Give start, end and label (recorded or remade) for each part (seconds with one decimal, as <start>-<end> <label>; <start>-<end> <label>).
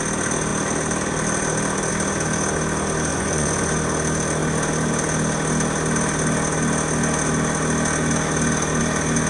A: 0.0-3.1 recorded; 3.1-3.7 remade; 3.7-9.3 recorded